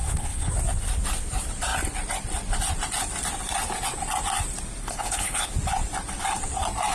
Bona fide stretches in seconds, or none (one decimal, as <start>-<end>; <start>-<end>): 0.5-4.8; 5.5-6.9